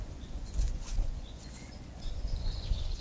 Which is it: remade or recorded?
remade